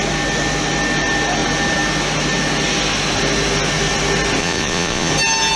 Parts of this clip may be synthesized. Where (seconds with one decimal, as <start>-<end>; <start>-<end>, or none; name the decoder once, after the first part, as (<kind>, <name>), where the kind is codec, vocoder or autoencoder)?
4.4-5.1 (vocoder, Vocos)

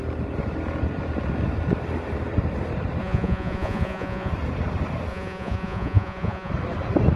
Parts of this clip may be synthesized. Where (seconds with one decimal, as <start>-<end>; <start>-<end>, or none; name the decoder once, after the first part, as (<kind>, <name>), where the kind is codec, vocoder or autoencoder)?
3.0-4.3 (vocoder, Vocos); 5.1-6.5

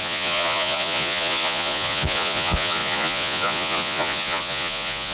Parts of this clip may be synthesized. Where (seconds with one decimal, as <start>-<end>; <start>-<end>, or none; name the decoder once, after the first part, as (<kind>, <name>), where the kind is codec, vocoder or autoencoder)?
0.0-5.1 (vocoder, Vocos)

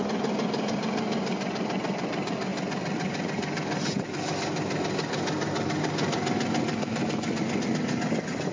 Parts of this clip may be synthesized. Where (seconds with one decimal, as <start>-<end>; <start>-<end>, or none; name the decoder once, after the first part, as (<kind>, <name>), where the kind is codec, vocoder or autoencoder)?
none

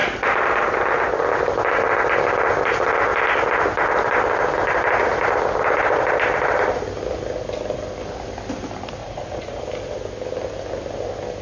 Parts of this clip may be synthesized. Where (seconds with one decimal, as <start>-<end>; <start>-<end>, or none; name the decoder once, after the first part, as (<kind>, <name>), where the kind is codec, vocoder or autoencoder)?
9.0-9.7 (vocoder, Vocos)

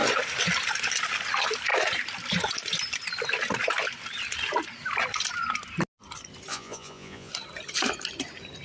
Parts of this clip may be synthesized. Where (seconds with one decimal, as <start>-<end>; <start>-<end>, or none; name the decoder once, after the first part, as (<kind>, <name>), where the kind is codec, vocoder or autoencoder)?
6.5-7.3 (vocoder, Vocos)

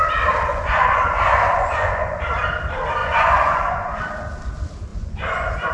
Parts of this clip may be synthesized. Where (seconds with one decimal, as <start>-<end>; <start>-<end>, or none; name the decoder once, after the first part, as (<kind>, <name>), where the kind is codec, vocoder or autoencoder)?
0.5-2.2 (vocoder, Vocos); 3.0-4.0; 4.9-5.7